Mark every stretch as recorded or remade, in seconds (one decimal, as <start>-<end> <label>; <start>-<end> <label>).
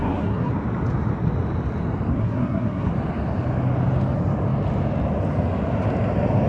0.0-0.5 remade; 0.5-2.1 recorded; 2.1-2.9 remade; 2.9-6.5 recorded